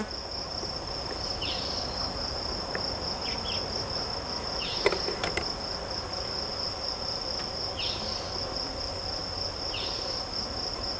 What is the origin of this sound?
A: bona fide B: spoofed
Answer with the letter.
A